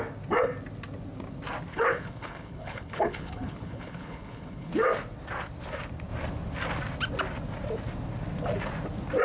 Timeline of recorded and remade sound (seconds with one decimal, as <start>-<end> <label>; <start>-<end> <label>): 0.0-1.7 recorded; 1.7-4.7 remade; 4.7-9.2 recorded